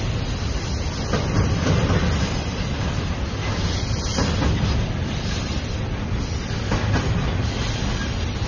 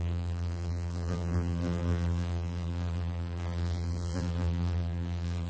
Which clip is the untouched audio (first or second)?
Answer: first